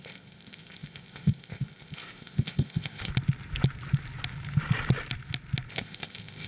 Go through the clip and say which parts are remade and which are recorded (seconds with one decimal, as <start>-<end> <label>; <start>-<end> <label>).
0.0-3.1 remade; 3.1-5.7 recorded; 5.7-6.5 remade